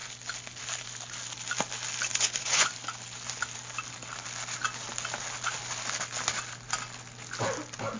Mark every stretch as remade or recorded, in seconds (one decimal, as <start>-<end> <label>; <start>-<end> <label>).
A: 0.0-2.1 recorded; 2.1-2.7 remade; 2.7-8.0 recorded